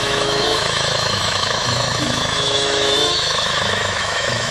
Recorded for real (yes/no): no